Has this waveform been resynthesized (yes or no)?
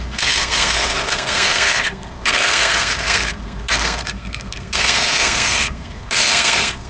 yes